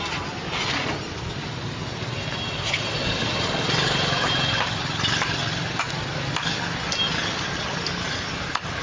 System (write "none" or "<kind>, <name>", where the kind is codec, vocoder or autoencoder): none